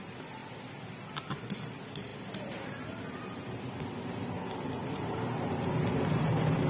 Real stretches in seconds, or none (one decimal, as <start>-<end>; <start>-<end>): 0.0-6.7